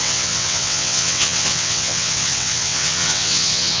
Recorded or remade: remade